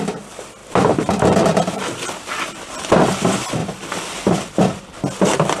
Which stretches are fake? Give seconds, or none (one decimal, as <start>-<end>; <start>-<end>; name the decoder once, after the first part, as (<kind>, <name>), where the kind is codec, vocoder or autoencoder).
0.6-2.9 (vocoder, BigVGAN v2); 3.6-4.8